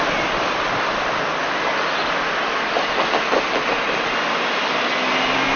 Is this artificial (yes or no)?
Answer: no